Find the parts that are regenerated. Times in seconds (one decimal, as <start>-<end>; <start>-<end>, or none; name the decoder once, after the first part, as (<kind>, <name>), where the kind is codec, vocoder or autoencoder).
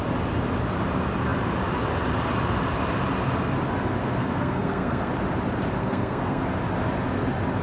4.0-5.1 (codec, SNAC); 5.8-6.4